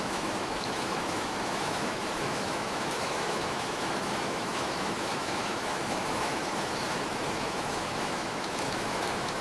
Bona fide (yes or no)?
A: no